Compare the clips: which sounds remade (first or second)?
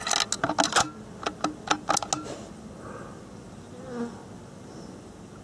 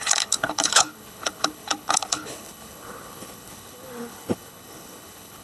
second